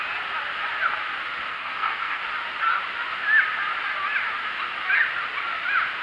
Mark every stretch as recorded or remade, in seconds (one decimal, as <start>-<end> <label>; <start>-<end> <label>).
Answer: 0.0-1.5 recorded; 1.5-2.2 remade; 2.2-6.0 recorded